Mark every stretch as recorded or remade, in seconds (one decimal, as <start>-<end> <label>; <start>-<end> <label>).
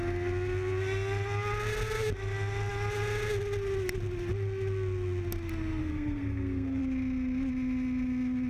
0.0-5.8 recorded; 5.8-6.8 remade; 6.8-8.5 recorded